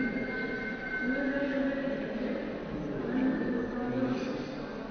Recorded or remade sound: recorded